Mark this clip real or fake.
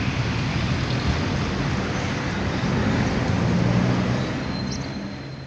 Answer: real